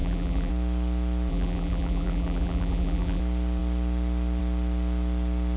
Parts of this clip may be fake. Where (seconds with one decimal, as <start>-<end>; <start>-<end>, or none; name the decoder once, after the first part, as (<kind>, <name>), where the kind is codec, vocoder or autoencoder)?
0.0-0.5 (vocoder, BigVGAN v2); 1.3-3.2